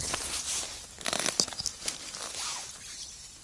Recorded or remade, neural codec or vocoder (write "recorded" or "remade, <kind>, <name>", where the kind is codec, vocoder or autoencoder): recorded